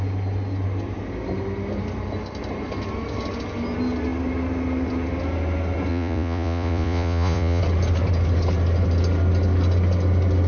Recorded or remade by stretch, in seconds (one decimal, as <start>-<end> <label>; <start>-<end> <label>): 0.0-5.9 recorded; 5.9-7.6 remade; 7.6-10.5 recorded